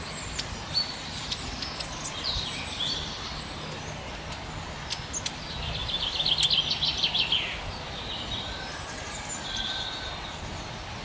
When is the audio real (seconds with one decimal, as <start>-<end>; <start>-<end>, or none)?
0.0-5.8; 6.3-11.0